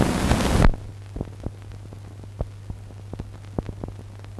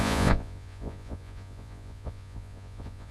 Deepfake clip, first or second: second